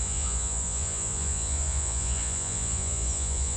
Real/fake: fake